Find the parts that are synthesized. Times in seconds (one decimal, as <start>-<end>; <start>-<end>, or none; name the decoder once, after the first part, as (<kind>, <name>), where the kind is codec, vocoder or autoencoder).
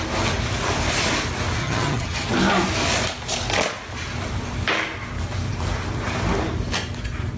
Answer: 1.6-2.3 (vocoder, HiFi-GAN)